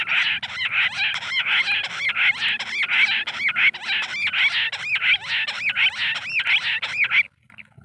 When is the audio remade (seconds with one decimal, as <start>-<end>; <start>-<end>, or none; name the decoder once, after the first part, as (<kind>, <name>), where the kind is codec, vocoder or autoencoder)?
none